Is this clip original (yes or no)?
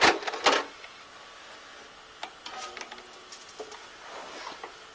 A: yes